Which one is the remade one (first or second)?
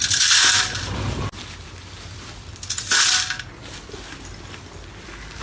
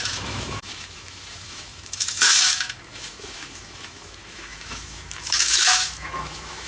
second